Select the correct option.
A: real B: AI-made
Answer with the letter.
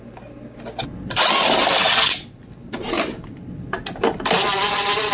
B